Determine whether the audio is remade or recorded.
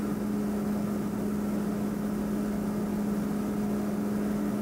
recorded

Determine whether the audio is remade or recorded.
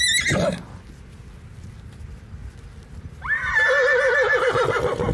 recorded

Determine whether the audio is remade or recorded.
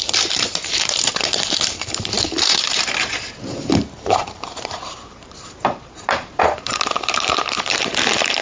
remade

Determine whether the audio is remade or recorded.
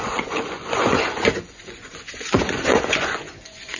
remade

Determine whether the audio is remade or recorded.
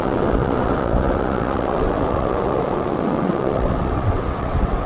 remade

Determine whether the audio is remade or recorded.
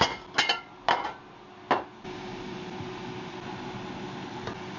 recorded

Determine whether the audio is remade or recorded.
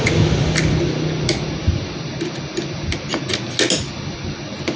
recorded